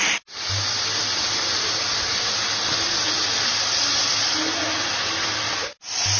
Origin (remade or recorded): recorded